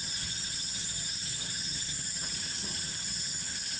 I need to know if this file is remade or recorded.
remade